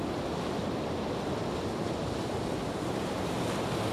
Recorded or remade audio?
recorded